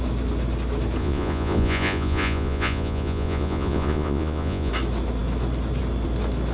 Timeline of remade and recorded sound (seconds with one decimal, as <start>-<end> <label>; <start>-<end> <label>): 0.0-1.0 recorded; 1.0-4.7 remade; 4.7-6.5 recorded